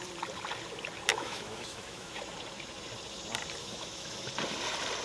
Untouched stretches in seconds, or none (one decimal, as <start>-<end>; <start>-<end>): 0.0-1.1; 2.2-3.6; 4.3-5.0